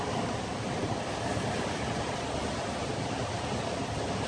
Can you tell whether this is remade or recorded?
recorded